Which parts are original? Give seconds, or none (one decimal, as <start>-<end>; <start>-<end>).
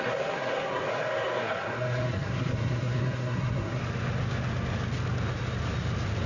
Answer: 3.8-6.3